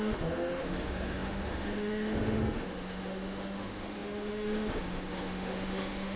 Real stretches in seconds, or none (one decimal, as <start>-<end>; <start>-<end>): none